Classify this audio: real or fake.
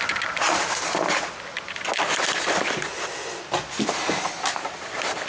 real